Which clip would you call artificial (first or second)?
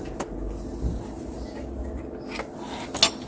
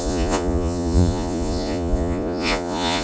second